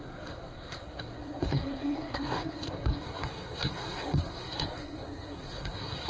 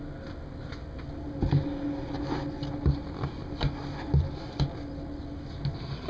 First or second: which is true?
second